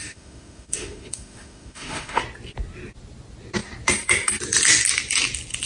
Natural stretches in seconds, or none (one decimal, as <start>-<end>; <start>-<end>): 2.2-5.7